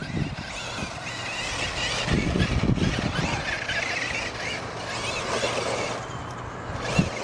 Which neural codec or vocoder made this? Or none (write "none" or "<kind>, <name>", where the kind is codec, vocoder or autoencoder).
none